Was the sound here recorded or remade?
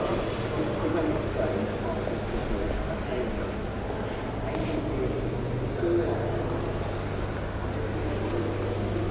recorded